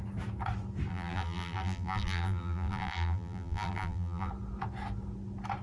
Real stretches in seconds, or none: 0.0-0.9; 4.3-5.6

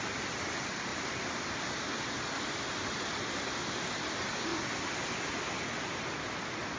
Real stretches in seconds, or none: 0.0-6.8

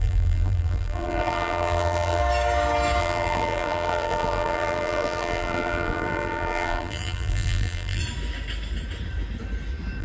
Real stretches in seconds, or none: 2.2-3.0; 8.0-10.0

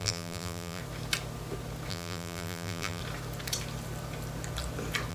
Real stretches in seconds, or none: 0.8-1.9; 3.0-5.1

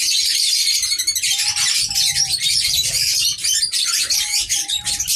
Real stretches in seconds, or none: 1.4-2.3

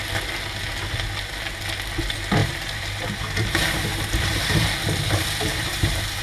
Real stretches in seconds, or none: 0.0-2.4

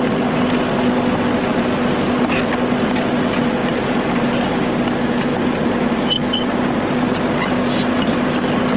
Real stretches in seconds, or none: 0.0-3.6; 4.3-8.8